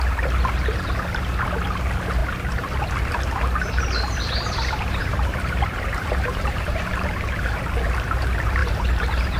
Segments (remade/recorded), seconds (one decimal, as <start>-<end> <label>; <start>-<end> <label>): 0.0-5.0 recorded; 5.0-7.6 remade; 7.6-8.6 recorded; 8.6-9.4 remade